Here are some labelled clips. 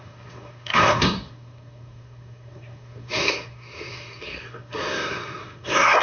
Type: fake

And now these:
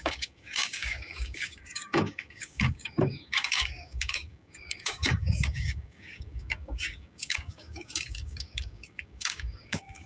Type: fake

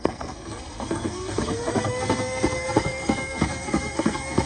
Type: fake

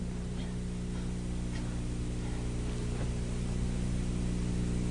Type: real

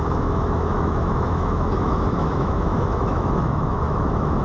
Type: fake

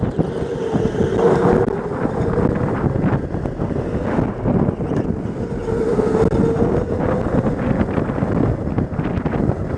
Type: real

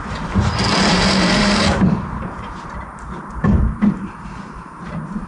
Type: fake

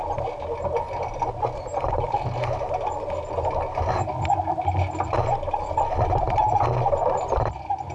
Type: real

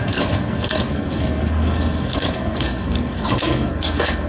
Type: fake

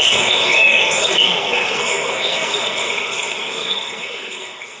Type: fake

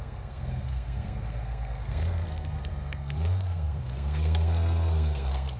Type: fake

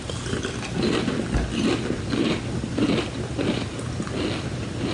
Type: real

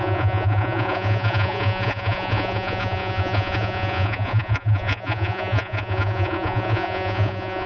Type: fake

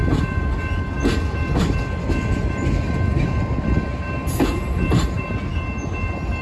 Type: real